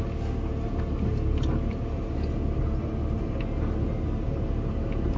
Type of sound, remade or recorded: recorded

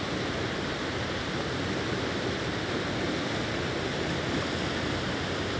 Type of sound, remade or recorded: recorded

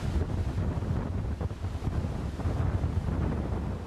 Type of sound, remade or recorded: recorded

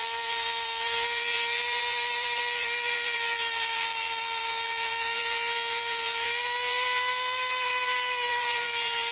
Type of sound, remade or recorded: remade